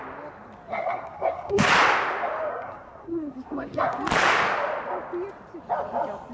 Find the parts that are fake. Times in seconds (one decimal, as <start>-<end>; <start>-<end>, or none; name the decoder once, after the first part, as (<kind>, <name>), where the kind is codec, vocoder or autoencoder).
0.7-1.7 (codec, SNAC); 2.5-4.0